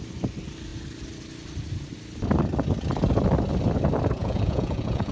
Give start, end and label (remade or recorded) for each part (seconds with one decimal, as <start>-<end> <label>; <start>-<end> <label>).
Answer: 0.0-4.2 recorded; 4.2-5.1 remade